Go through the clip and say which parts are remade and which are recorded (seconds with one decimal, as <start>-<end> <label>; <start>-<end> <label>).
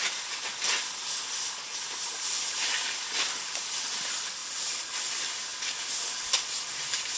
0.0-4.4 recorded; 4.4-5.0 remade; 5.0-7.2 recorded